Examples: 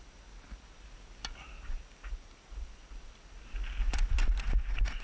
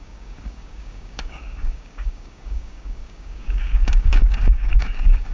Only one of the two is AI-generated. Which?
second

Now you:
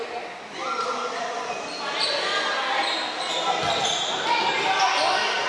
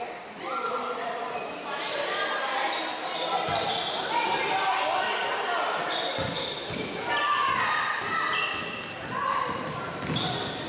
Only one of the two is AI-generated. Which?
second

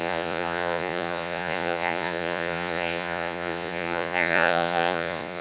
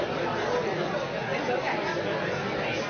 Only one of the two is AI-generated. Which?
first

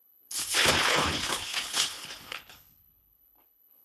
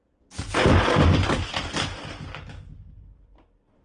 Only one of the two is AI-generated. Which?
first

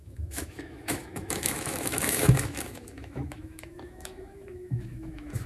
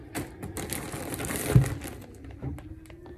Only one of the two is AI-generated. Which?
first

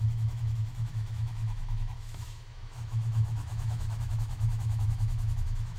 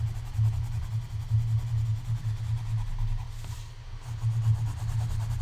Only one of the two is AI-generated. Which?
first